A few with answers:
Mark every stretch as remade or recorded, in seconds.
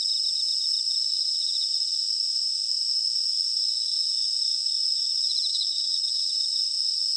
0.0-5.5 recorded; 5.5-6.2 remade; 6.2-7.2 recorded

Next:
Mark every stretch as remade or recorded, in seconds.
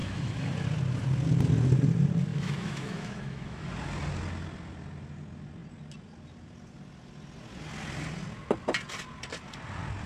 0.0-0.5 remade; 0.5-2.3 recorded; 2.3-3.7 remade; 3.7-10.1 recorded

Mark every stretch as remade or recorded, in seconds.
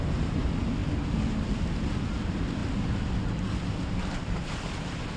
0.0-5.2 recorded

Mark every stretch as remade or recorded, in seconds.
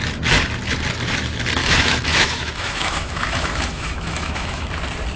0.0-1.6 recorded; 1.6-4.7 remade; 4.7-5.2 recorded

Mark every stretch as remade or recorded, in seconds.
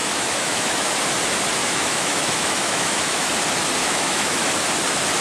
0.0-0.9 remade; 0.9-1.6 recorded; 1.6-3.3 remade; 3.3-3.8 recorded; 3.8-4.5 remade; 4.5-5.2 recorded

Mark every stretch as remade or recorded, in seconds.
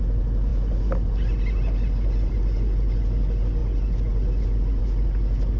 0.0-5.6 recorded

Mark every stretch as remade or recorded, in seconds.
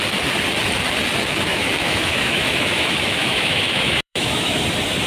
0.0-1.5 recorded; 1.5-4.6 remade; 4.6-5.1 recorded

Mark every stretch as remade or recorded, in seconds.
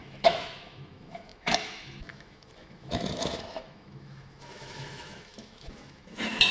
0.0-6.5 remade